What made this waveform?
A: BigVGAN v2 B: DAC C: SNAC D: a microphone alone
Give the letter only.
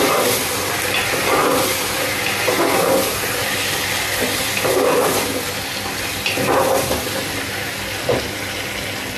D